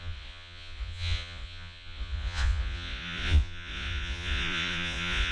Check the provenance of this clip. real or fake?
fake